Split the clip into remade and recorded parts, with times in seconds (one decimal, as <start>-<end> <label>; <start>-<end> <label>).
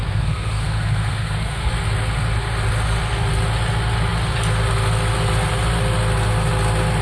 0.0-1.7 remade; 1.7-7.0 recorded